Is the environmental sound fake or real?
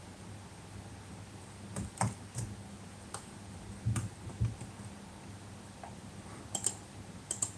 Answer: real